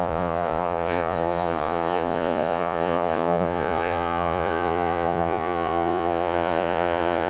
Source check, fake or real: fake